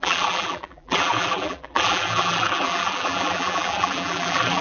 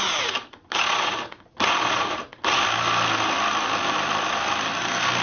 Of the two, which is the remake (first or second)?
first